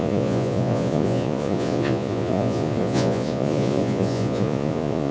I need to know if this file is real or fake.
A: fake